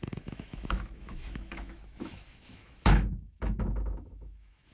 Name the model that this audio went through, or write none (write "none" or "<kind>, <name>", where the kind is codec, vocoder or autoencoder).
autoencoder, DAC-VAE